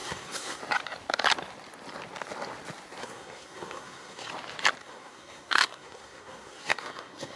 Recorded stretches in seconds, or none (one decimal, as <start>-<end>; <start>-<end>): 0.6-3.0; 4.3-4.8